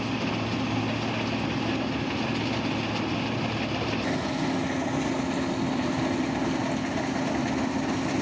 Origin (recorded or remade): recorded